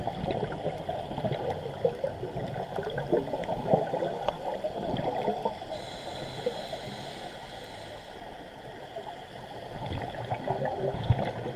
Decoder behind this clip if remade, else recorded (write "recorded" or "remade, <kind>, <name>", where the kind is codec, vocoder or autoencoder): recorded